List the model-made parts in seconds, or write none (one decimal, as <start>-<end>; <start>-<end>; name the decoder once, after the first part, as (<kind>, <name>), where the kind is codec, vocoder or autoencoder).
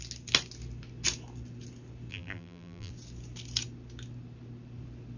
2.1-2.9 (vocoder, BigVGAN v2)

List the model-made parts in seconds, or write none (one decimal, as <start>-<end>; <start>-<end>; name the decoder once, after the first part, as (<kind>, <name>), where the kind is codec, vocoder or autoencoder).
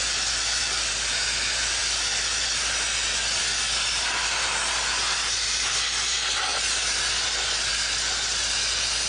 none